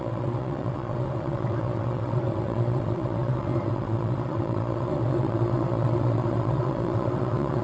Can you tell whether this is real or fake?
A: fake